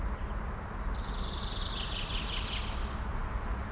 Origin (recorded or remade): recorded